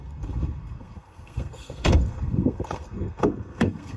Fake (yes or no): yes